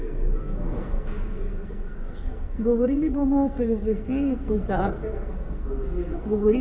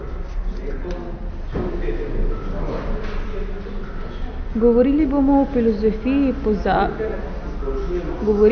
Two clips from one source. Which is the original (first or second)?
second